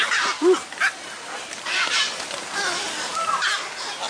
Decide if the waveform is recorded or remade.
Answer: recorded